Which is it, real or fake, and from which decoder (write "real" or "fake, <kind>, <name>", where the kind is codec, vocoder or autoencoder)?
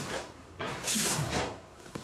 fake, codec, SNAC